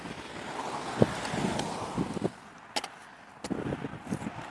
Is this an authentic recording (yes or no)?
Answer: yes